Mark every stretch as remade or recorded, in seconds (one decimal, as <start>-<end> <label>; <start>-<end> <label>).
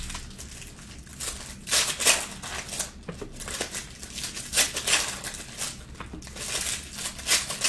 0.0-7.7 recorded